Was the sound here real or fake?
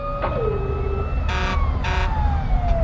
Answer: real